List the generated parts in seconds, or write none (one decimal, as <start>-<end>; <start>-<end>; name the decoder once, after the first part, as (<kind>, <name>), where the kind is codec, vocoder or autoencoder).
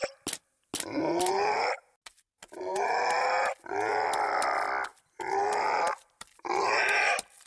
none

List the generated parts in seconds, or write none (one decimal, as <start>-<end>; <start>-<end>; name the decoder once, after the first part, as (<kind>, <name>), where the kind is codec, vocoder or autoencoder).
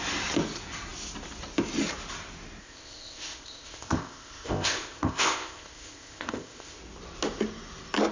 2.6-6.8 (codec, ZipCodec)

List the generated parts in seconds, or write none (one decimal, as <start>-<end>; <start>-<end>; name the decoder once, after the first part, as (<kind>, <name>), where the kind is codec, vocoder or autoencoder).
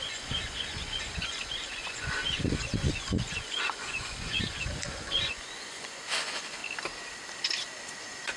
0.0-6.6 (vocoder, Vocos); 8.0-8.4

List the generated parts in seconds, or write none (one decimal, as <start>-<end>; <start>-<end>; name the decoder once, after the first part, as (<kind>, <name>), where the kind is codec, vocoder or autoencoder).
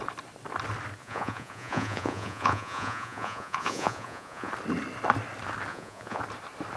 1.0-4.5 (vocoder, Vocos); 5.7-6.2